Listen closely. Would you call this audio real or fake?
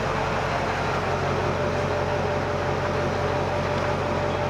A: real